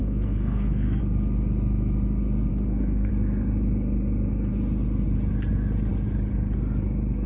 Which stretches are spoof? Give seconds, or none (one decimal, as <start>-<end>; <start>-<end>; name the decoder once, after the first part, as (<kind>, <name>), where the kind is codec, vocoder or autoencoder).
0.0-1.0 (codec, SNAC); 2.5-3.1